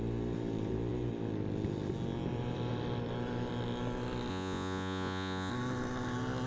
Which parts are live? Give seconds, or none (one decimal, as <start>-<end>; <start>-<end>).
0.0-4.3; 5.5-6.5